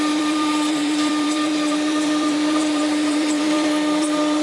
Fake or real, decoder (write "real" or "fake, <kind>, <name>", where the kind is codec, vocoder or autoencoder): fake, vocoder, BigVGAN v2